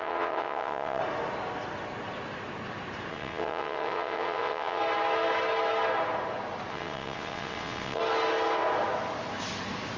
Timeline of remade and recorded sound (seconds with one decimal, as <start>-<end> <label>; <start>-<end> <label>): 0.0-1.0 remade; 1.0-3.1 recorded; 3.1-4.8 remade; 4.8-6.7 recorded; 6.7-8.0 remade; 8.0-10.0 recorded